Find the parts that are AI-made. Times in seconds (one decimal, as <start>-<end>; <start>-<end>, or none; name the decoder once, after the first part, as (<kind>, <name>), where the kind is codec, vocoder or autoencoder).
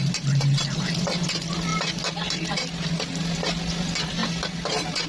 none